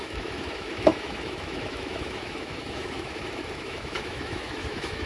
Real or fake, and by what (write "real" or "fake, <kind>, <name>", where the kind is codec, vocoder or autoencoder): fake, autoencoder, DAC-VAE